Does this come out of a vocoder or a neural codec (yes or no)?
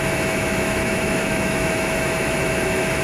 yes